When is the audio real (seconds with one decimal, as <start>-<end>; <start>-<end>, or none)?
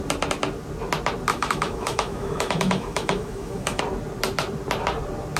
0.0-1.3; 3.8-5.4